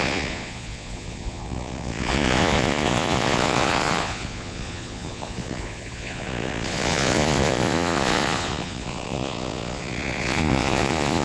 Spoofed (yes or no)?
yes